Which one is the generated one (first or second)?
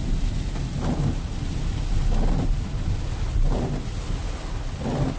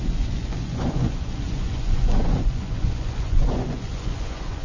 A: second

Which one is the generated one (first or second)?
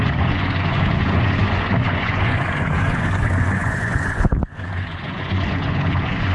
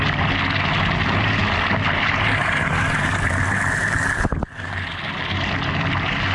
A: first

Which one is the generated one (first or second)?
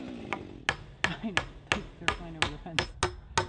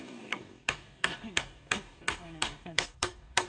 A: second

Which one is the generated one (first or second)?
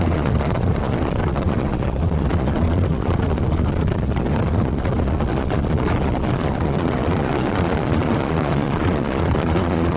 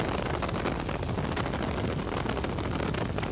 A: first